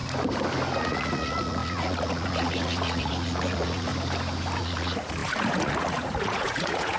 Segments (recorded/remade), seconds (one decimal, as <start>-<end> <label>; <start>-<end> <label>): 0.0-0.8 recorded; 0.8-3.9 remade; 3.9-4.6 recorded; 4.6-7.0 remade